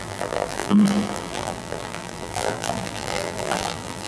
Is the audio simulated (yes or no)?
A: yes